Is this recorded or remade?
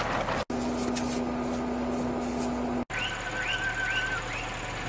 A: recorded